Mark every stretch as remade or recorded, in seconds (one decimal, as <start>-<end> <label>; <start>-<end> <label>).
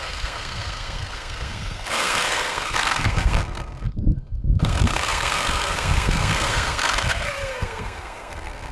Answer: 0.0-8.7 remade